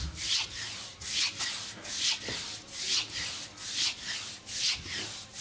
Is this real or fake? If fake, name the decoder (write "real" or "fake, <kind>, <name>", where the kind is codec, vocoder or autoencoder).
real